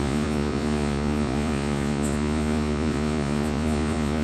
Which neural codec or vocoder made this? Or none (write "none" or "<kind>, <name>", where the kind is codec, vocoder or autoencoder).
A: vocoder, Vocos